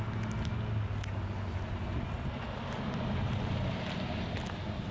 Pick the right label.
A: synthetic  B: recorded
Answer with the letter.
B